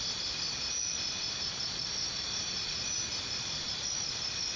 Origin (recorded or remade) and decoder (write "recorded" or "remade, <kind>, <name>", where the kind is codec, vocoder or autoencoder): recorded